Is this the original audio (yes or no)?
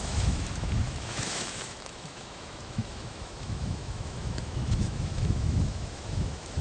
no